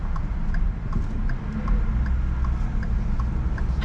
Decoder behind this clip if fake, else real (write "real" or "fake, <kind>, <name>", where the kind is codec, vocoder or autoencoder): real